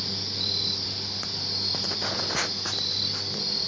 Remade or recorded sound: recorded